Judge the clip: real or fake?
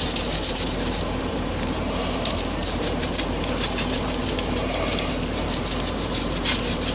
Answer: fake